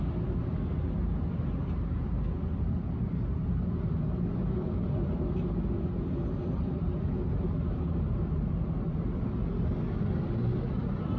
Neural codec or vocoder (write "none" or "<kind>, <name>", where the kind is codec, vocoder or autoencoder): none